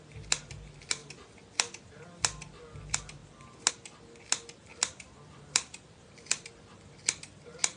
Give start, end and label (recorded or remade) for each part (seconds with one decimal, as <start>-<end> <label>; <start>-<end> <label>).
0.0-1.0 recorded; 1.0-1.9 remade; 1.9-4.7 recorded; 4.7-6.5 remade; 6.5-7.8 recorded